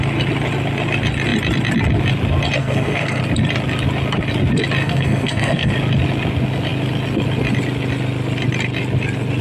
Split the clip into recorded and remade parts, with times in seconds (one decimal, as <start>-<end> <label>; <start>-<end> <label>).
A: 0.0-2.6 recorded; 2.6-3.2 remade; 3.2-4.8 recorded; 4.8-5.7 remade; 5.7-9.4 recorded